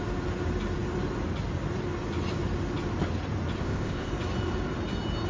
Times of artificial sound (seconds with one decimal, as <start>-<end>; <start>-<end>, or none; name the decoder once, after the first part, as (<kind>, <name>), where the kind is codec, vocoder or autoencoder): 3.6-4.1 (codec, ZipCodec)